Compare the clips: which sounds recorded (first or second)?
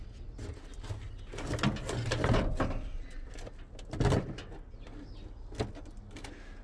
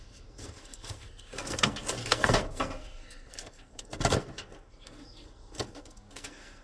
first